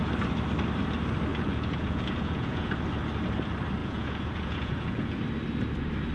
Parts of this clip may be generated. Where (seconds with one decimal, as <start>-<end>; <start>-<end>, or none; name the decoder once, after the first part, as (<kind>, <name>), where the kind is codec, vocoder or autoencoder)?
1.3-2.7 (vocoder, Vocos); 3.8-5.2